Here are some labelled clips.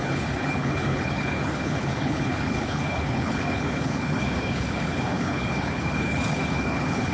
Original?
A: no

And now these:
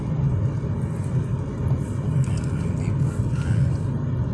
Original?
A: yes